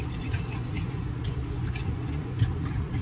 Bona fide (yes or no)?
no